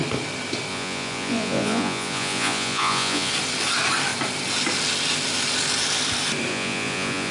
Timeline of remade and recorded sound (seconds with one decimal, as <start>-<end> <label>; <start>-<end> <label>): 0.0-0.7 recorded; 0.7-3.3 remade; 3.3-6.5 recorded; 6.5-7.3 remade